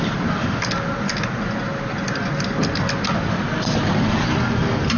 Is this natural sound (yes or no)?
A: yes